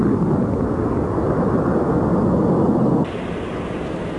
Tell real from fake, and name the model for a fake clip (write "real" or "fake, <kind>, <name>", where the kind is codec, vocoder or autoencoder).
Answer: real